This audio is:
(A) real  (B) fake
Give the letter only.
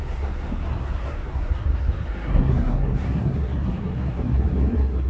B